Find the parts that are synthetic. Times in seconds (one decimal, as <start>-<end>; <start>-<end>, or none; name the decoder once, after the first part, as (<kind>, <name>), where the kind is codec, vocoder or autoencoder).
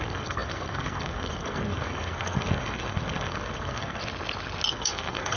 0.0-4.0 (codec, SNAC); 4.7-5.4